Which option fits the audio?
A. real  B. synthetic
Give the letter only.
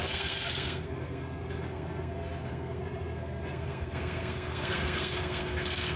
B